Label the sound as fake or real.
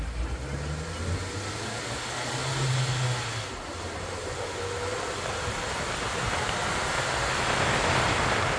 real